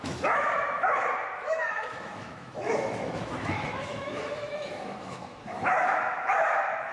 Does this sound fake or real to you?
fake